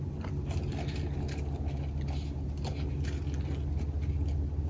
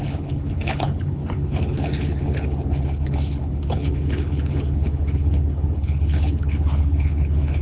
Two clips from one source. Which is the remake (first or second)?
second